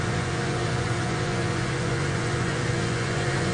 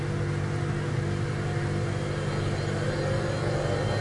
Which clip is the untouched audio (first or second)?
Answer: second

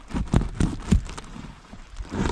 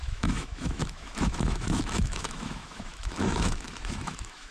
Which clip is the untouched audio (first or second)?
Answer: first